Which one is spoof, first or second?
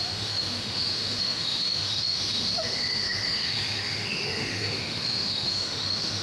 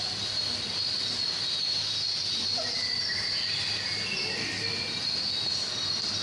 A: first